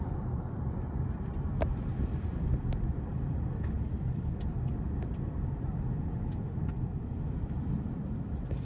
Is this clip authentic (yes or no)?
no